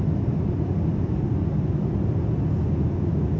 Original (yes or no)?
yes